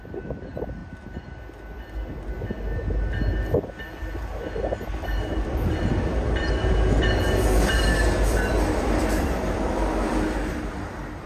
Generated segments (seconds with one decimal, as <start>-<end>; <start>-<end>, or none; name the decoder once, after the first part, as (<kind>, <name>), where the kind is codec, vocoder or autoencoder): 0.0-0.8 (vocoder, BigVGAN v2); 4.9-11.3